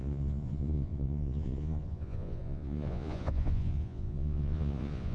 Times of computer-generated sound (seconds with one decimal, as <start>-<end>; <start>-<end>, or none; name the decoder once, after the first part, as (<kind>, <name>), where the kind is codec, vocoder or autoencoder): 0.0-5.1 (vocoder, Vocos)